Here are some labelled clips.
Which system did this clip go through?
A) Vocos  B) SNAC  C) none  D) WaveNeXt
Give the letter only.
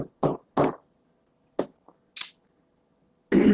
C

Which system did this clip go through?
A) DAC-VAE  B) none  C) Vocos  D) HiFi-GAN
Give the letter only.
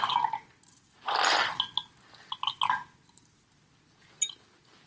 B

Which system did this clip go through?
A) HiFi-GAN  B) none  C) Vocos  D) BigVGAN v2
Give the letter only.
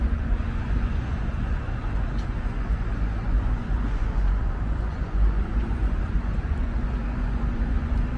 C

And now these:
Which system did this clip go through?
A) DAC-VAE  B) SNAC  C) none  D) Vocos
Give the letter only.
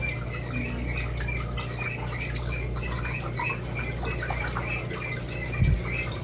C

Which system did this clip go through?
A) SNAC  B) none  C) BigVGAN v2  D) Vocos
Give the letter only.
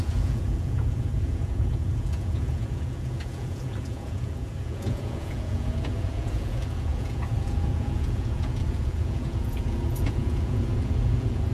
D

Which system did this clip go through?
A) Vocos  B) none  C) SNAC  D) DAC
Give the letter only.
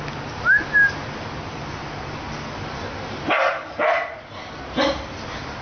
B